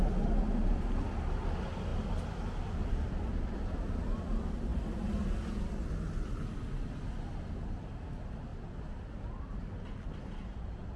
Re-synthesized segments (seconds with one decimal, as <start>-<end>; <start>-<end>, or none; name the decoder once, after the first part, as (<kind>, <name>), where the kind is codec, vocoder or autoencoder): none